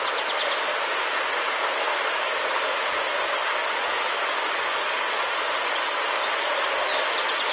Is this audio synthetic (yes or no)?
no